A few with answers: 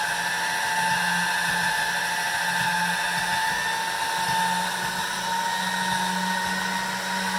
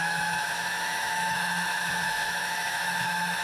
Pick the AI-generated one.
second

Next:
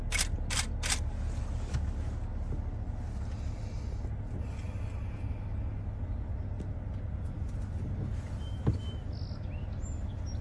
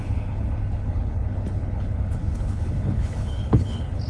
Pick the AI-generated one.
second